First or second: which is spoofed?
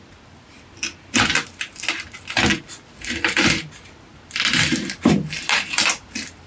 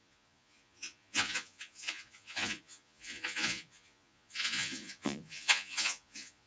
second